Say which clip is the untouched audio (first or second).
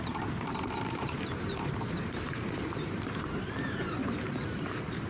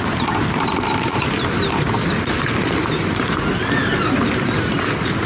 second